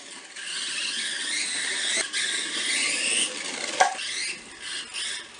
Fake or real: real